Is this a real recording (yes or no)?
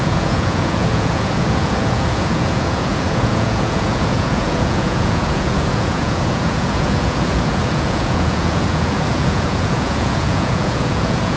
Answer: no